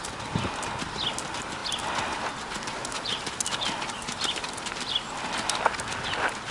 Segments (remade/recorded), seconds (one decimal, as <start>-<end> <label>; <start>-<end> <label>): 0.0-6.5 recorded